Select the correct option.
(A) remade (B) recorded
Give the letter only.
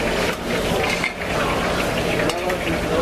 B